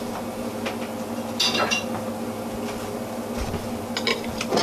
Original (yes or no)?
yes